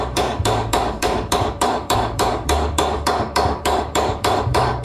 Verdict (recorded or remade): remade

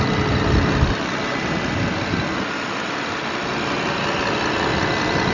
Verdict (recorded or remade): recorded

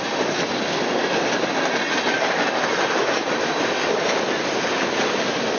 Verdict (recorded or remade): recorded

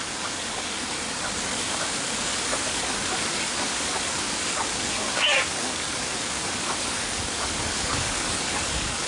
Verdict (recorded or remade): remade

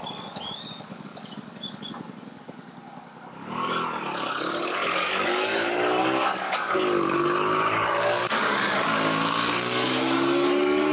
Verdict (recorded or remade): remade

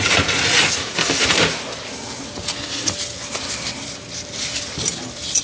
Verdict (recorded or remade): recorded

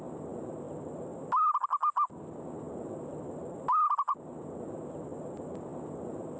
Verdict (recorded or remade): recorded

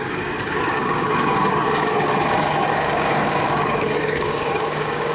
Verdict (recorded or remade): remade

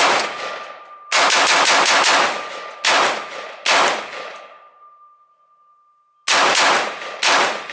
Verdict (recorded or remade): recorded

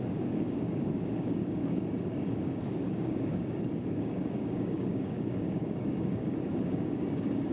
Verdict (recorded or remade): remade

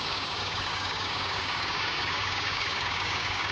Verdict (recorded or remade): remade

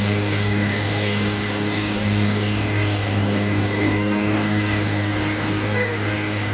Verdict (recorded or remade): remade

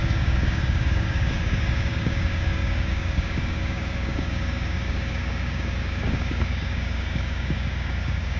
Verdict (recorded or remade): remade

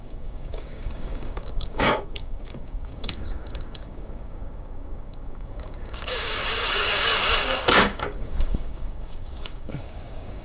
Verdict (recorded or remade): remade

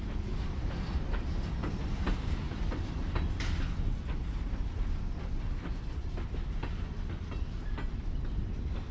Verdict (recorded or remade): recorded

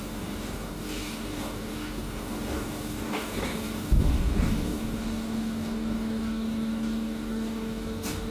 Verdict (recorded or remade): remade